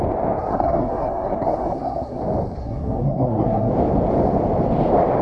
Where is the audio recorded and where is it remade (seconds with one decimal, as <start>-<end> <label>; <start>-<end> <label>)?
0.0-0.5 recorded; 0.5-2.2 remade; 2.2-2.6 recorded; 2.6-3.7 remade; 3.7-5.2 recorded